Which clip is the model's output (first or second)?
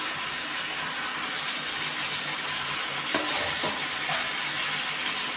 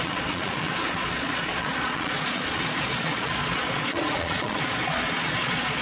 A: second